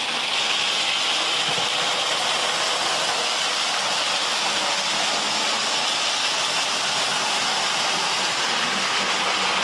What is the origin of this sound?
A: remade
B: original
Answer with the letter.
B